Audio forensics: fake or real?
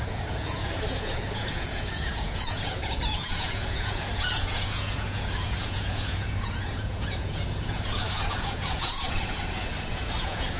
fake